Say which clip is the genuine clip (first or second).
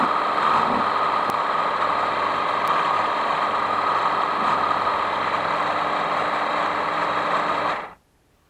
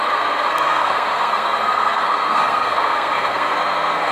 first